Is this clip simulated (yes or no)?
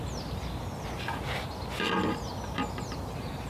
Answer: no